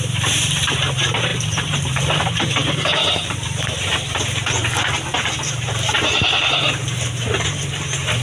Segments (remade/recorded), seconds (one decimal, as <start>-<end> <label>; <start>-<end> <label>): 0.0-8.2 remade